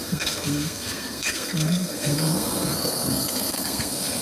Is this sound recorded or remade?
remade